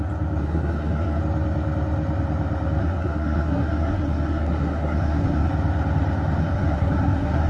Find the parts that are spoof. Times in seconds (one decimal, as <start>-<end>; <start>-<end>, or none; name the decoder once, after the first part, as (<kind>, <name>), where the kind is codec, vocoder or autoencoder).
0.4-1.2 (codec, SNAC); 2.8-5.5; 6.4-7.5